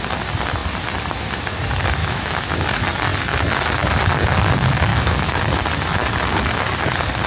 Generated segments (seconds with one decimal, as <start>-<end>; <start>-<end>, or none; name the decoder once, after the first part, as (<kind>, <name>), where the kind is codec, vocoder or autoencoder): 2.0-2.5 (autoencoder, DAC-VAE); 4.9-5.4

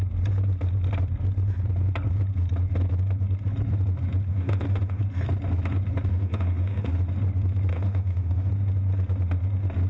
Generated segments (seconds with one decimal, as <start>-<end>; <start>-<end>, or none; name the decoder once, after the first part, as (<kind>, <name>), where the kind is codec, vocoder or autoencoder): 4.3-5.0 (autoencoder, DAC-VAE); 6.1-6.9; 7.7-8.5

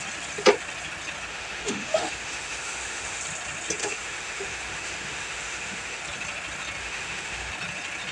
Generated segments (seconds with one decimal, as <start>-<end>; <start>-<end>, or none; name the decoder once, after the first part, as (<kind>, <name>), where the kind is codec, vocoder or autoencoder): 1.3-3.2 (autoencoder, DAC-VAE); 3.8-6.0; 6.8-7.5

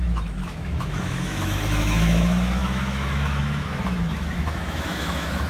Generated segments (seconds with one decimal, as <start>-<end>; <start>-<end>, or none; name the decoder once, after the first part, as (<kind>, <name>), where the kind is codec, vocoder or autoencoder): 0.0-5.5 (autoencoder, DAC-VAE)

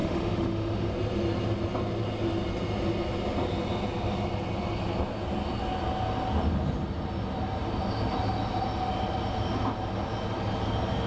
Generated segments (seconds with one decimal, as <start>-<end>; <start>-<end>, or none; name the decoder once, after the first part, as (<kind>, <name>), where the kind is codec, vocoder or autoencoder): 0.0-0.9 (autoencoder, DAC-VAE)

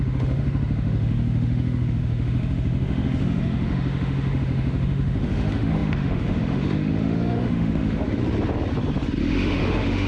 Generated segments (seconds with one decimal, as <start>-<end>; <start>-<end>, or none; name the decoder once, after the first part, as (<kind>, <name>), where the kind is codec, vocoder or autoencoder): 0.0-8.2 (autoencoder, DAC-VAE); 9.2-10.1